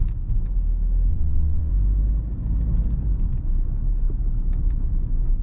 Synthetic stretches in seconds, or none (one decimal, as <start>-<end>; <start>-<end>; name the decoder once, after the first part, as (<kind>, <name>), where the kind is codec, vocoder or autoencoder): 1.1-1.7 (vocoder, WaveNeXt)